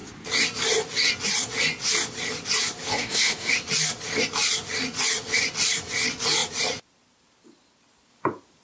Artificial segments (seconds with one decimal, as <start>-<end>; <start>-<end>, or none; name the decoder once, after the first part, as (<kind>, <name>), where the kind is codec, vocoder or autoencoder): 2.9-3.5 (codec, DAC)